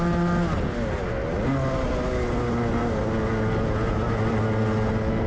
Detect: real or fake real